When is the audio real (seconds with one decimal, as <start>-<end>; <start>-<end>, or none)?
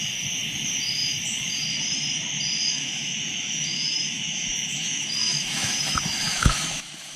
0.0-2.7